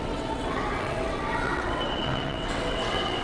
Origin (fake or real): fake